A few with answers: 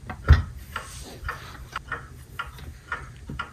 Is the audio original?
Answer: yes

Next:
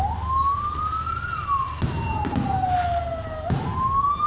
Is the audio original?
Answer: yes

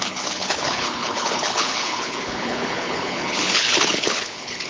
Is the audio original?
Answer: no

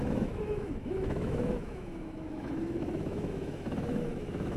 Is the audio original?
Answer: no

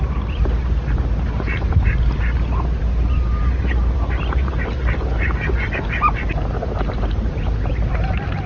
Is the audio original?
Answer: no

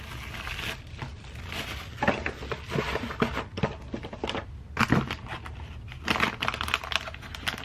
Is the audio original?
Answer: yes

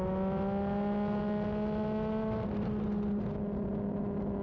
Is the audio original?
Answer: yes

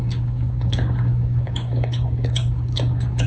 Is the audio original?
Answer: no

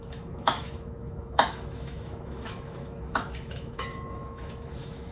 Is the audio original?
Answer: no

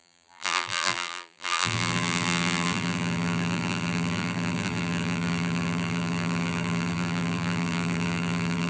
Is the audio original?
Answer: no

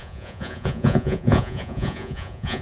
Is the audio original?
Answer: no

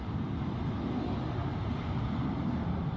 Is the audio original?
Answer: yes